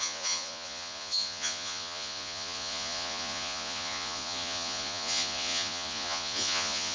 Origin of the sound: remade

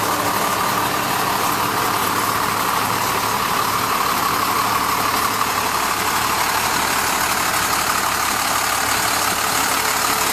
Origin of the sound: recorded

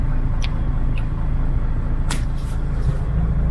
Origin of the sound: recorded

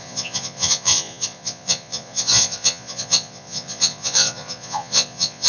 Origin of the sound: remade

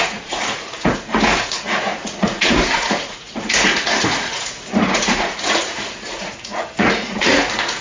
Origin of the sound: remade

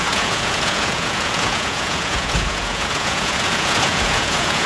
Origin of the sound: remade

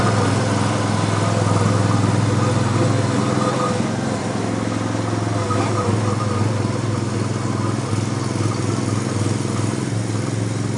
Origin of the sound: recorded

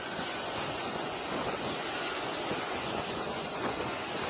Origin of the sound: remade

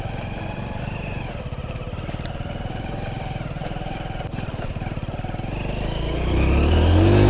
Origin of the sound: recorded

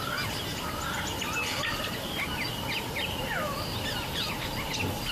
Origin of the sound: recorded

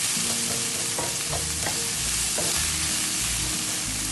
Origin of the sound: recorded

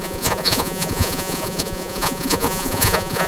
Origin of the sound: remade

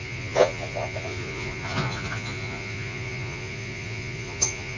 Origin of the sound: remade